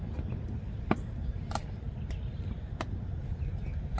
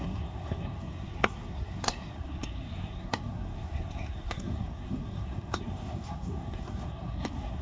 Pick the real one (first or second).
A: first